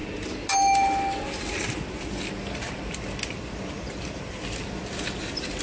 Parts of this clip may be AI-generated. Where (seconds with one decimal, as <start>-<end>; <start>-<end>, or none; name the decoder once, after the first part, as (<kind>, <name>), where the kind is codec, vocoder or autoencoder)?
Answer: 3.4-5.6 (vocoder, BigVGAN v2)